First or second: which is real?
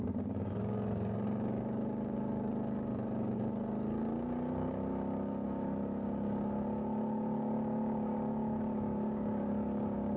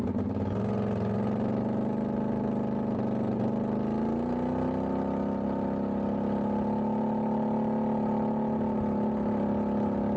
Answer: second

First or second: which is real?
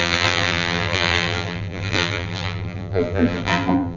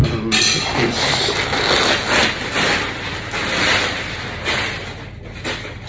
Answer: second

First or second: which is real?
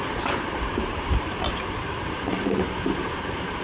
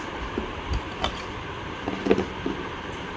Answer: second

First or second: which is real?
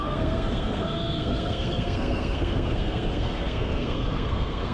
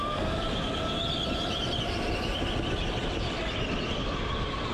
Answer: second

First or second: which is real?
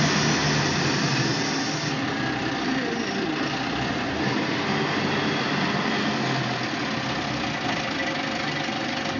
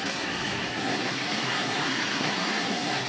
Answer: first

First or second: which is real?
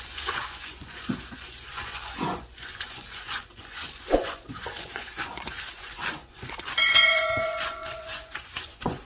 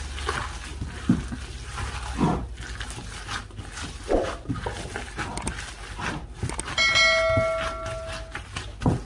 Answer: second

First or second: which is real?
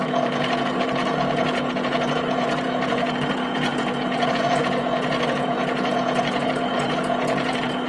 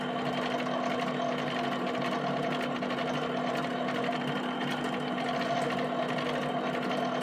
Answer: second